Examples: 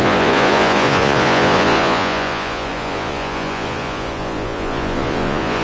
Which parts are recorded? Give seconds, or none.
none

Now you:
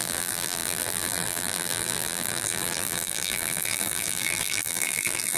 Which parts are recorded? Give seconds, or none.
none

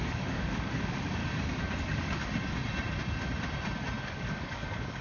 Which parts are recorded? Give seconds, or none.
1.2-1.8; 2.2-4.0

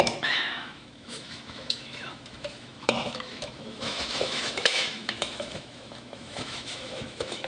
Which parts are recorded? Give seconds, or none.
none

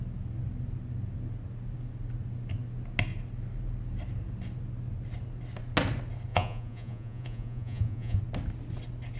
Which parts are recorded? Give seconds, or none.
0.0-6.3; 8.2-9.2

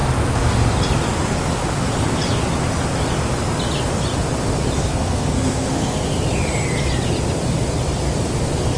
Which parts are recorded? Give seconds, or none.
0.0-4.8; 6.0-8.8

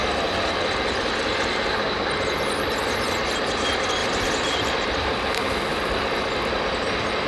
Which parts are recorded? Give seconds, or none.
0.0-4.0; 5.1-7.3

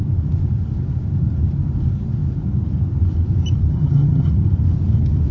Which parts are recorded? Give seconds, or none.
0.0-3.7; 4.3-5.3